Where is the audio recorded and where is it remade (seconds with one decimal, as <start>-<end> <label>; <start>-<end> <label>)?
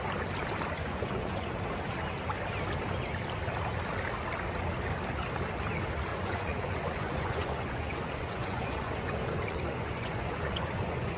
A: 0.0-0.8 recorded; 0.8-1.5 remade; 1.5-6.1 recorded; 6.1-11.2 remade